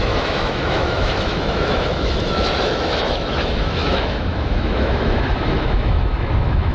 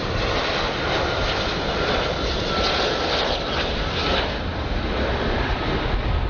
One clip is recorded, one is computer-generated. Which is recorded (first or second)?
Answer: second